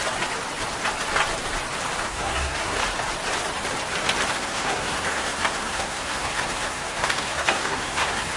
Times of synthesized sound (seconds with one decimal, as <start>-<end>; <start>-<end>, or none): 2.0-2.8; 4.3-8.4

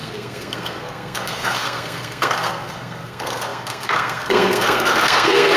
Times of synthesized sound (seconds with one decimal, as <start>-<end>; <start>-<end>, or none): 0.0-5.6

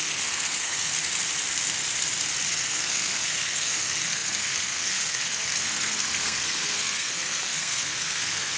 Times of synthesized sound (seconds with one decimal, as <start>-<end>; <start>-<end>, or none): 0.0-0.9; 2.5-8.6

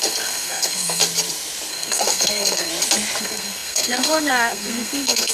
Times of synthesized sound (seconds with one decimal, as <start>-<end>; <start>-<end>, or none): 0.0-1.0; 1.7-2.7; 3.2-5.3

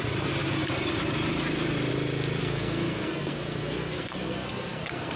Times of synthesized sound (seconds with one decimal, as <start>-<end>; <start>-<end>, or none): 2.4-5.2

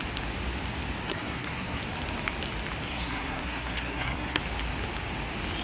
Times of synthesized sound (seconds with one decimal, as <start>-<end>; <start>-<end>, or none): 1.0-1.8; 2.8-4.4

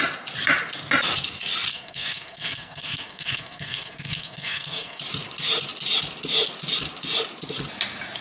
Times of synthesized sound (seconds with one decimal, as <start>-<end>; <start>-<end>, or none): 1.7-5.0

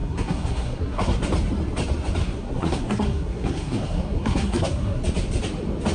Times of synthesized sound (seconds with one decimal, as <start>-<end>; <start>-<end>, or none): 0.0-1.2; 2.2-5.0